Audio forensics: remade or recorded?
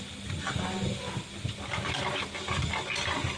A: recorded